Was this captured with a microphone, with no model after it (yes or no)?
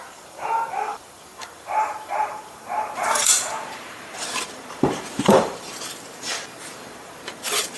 no